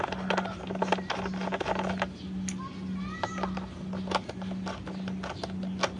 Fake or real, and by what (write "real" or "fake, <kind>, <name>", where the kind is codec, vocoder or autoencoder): real